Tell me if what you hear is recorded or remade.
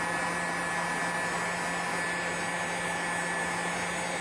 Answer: recorded